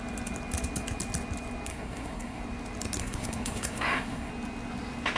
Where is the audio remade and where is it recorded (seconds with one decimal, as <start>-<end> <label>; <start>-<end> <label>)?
0.0-1.7 recorded; 1.7-2.4 remade; 2.4-3.0 recorded; 3.0-4.3 remade; 4.3-5.2 recorded